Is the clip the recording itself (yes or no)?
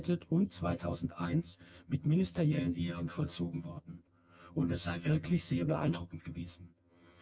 no